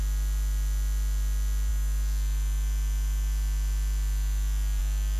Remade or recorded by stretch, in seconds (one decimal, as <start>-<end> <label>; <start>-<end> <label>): 0.0-5.2 recorded

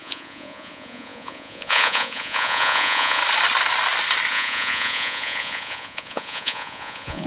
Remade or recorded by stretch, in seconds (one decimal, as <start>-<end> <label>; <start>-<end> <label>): 0.0-3.2 remade; 3.2-4.3 recorded; 4.3-7.3 remade

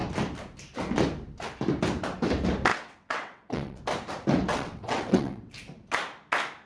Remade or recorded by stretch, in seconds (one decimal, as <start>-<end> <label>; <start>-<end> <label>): 0.0-2.7 recorded; 2.7-3.8 remade; 3.8-4.5 recorded; 4.5-5.5 remade; 5.5-6.7 recorded

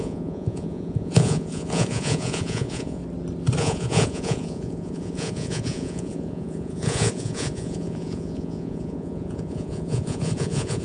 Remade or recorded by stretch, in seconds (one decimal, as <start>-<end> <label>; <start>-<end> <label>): 0.0-3.0 remade; 3.0-3.6 recorded; 3.6-10.8 remade

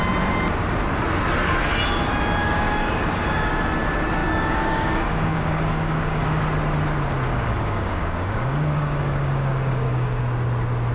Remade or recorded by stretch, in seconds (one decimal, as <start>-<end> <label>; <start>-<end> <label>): 0.0-2.4 recorded; 2.4-3.6 remade; 3.6-4.2 recorded; 4.2-6.4 remade; 6.4-7.3 recorded; 7.3-10.2 remade; 10.2-10.9 recorded